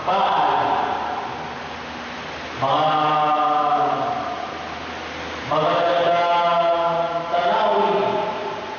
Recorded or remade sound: recorded